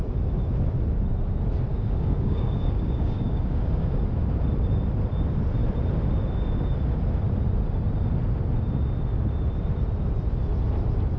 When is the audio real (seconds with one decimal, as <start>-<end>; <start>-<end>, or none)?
0.0-1.7; 4.0-11.2